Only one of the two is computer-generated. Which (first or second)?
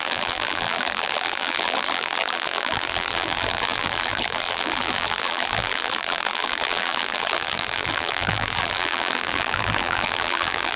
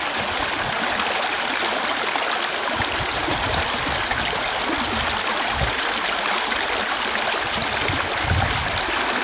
first